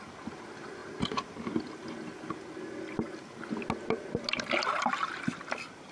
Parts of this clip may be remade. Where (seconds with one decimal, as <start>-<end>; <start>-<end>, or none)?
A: none